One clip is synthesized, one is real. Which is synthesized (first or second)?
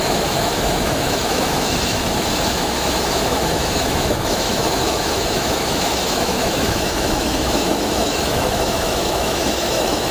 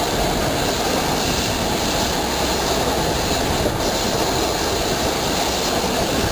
first